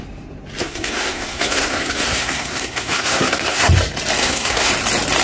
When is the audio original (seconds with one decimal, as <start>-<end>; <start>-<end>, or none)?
0.0-0.6; 3.7-4.2; 4.7-5.2